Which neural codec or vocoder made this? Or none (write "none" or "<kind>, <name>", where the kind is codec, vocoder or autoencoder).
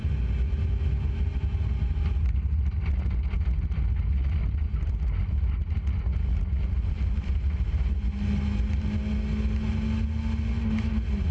none